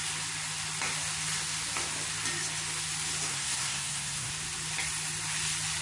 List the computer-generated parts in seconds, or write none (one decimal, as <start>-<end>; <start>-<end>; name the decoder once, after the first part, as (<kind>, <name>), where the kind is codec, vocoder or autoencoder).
3.3-4.3 (codec, SNAC)